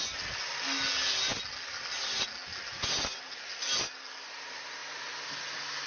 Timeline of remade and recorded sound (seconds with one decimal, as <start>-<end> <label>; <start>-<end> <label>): 0.0-5.9 recorded